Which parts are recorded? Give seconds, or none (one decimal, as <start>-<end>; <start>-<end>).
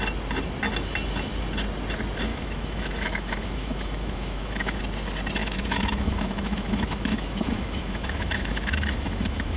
0.0-2.3; 4.8-5.4